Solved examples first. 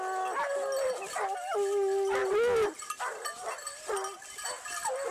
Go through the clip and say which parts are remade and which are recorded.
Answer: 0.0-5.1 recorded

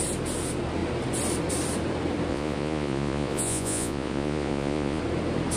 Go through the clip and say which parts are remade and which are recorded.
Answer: 0.0-2.3 recorded; 2.3-5.0 remade; 5.0-5.6 recorded

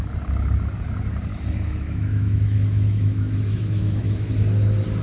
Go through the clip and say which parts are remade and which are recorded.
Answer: 0.0-1.3 recorded; 1.3-4.3 remade; 4.3-5.0 recorded

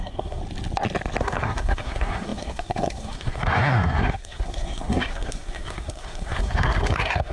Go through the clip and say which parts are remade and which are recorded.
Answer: 0.0-0.4 remade; 0.4-1.2 recorded; 1.2-7.3 remade

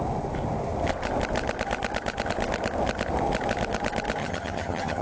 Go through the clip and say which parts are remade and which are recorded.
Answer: 0.0-4.2 recorded; 4.2-5.0 remade

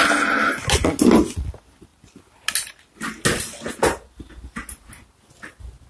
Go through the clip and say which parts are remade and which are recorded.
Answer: 0.0-5.9 recorded